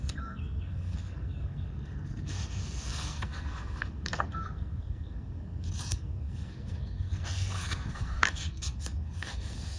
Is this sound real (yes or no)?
no